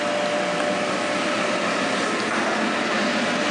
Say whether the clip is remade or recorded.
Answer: recorded